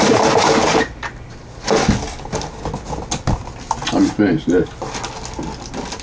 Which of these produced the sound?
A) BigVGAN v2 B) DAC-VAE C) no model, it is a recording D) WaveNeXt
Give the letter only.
C